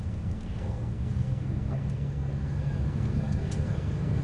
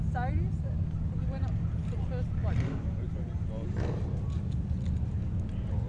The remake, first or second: first